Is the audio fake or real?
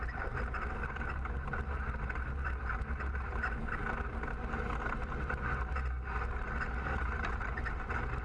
real